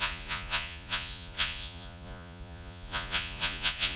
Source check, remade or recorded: remade